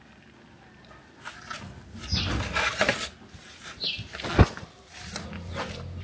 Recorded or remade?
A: recorded